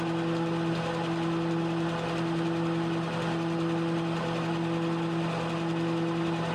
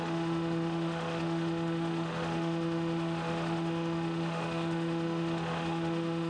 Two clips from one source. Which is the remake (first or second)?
second